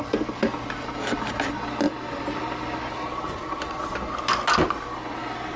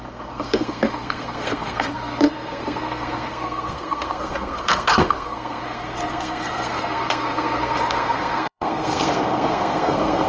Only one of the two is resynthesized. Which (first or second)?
second